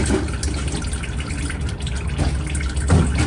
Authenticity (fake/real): real